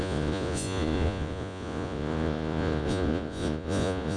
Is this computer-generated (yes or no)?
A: yes